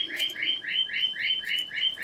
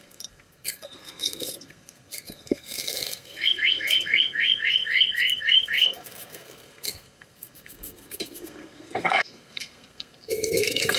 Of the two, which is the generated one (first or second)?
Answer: second